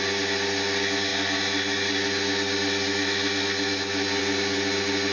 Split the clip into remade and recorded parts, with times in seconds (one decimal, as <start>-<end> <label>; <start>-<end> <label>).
0.0-5.1 recorded